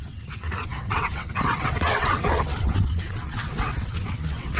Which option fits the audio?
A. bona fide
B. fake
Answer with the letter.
B